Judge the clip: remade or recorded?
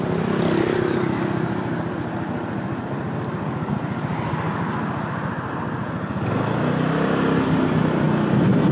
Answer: recorded